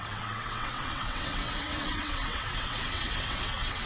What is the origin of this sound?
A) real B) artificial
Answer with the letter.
B